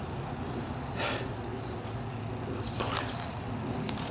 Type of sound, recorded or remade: recorded